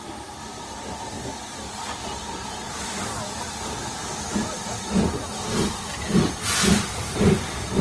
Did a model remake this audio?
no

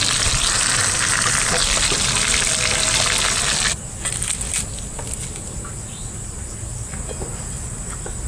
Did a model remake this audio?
no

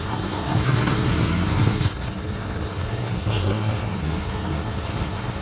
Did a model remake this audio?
yes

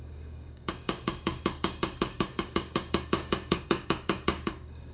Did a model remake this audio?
yes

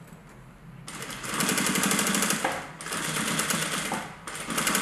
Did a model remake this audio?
no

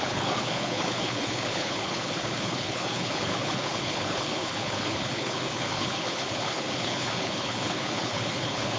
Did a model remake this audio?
yes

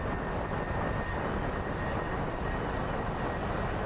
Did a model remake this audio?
no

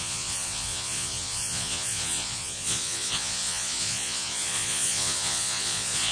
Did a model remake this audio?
yes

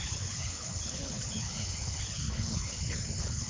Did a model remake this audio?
yes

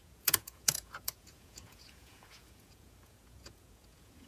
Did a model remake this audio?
yes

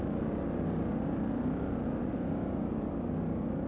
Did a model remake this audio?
no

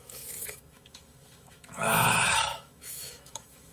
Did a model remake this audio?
yes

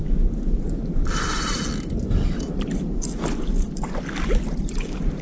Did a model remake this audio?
no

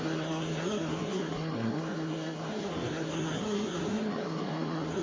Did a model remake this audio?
yes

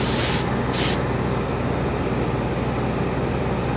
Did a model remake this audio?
no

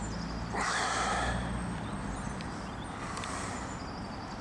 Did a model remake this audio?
yes